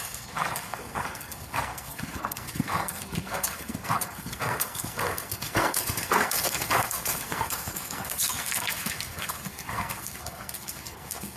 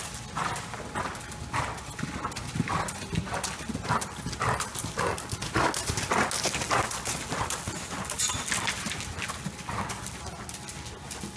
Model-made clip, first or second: first